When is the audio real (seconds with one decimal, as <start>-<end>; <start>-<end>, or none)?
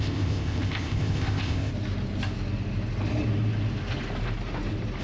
1.7-5.0